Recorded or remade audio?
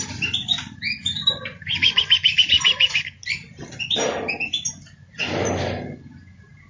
recorded